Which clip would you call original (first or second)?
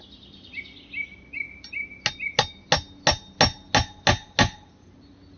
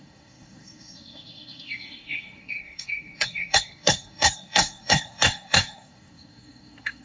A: first